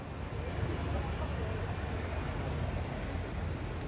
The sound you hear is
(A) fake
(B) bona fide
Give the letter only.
B